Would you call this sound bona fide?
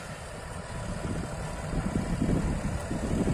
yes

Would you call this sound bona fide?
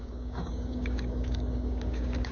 no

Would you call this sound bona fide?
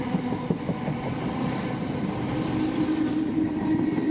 yes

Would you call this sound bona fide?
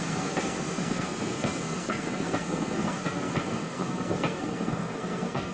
no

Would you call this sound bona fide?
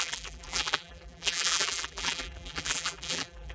no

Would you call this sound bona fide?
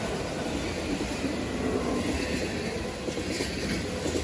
yes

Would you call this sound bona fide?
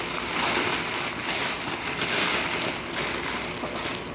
yes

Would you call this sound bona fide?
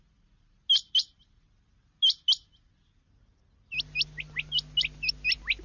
yes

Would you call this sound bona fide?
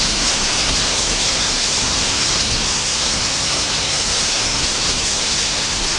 no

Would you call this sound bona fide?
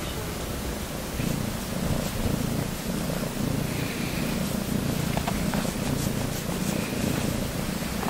yes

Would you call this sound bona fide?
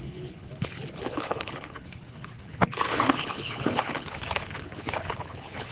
no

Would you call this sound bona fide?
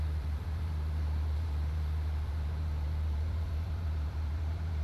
no